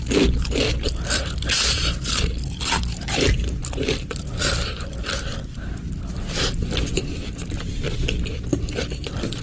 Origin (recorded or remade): remade